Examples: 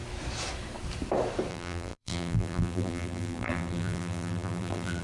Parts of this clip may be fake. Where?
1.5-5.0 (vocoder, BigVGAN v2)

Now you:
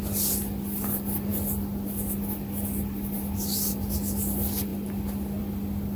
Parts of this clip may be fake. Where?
none

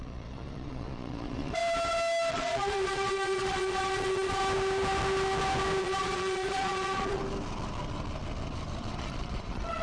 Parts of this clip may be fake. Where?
0.0-1.6 (vocoder, Vocos); 2.3-4.4; 5.8-7.2; 9.0-9.8

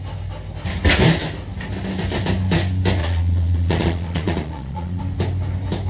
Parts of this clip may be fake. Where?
3.0-5.0 (vocoder, Vocos)

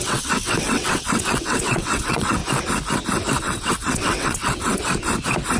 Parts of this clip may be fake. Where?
0.0-2.4 (vocoder, WaveNeXt); 3.4-4.7

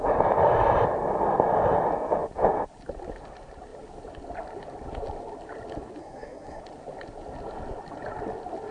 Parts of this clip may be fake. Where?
6.0-6.6 (codec, SNAC)